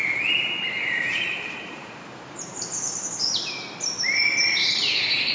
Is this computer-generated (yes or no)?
yes